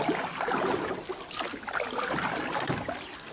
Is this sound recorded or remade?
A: recorded